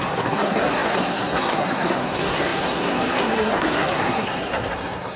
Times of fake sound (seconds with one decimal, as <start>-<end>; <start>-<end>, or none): 0.0-5.2